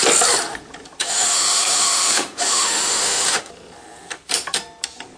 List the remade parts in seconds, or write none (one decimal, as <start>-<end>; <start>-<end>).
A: 1.0-3.5